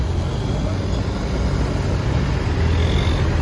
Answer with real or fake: real